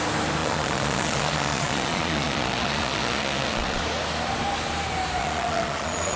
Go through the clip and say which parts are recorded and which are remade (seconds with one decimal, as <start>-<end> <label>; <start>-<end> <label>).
0.0-0.4 recorded; 0.4-3.8 remade; 3.8-5.2 recorded; 5.2-6.2 remade